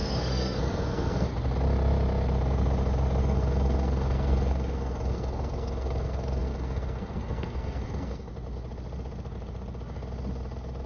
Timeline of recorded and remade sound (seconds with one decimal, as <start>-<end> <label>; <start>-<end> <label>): 0.0-1.3 remade; 1.3-3.2 recorded; 3.2-8.3 remade; 8.3-10.9 recorded